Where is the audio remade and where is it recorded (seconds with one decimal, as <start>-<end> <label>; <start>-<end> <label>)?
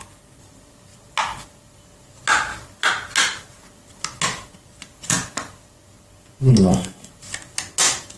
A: 0.0-6.5 recorded; 6.5-7.1 remade; 7.1-8.2 recorded